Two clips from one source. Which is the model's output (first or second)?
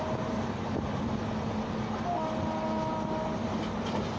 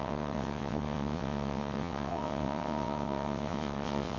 second